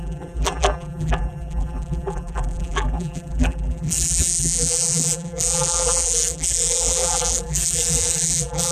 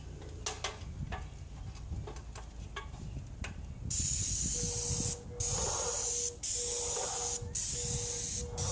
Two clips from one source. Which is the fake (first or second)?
first